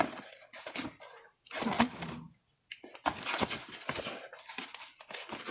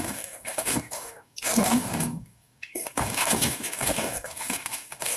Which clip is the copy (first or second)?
second